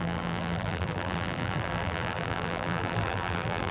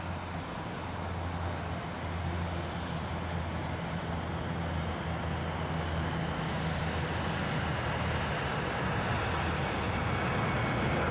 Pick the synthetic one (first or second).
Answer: first